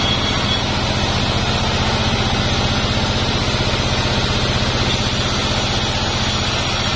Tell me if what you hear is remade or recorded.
recorded